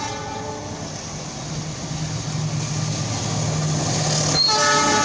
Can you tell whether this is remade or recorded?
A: recorded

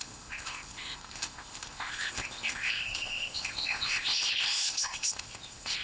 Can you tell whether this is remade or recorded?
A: remade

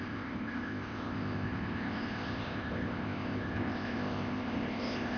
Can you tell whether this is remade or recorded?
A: remade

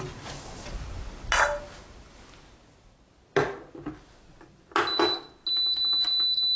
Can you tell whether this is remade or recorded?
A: recorded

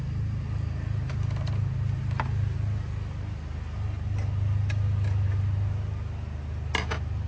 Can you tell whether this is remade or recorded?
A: recorded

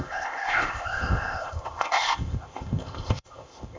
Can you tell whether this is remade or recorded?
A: remade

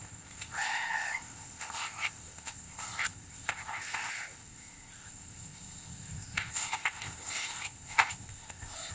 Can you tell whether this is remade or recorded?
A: remade